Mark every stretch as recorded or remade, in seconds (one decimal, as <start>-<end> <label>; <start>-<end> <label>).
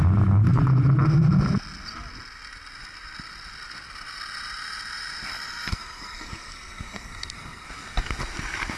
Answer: 0.0-5.7 recorded; 5.7-7.7 remade; 7.7-8.8 recorded